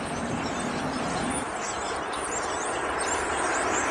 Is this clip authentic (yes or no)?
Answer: yes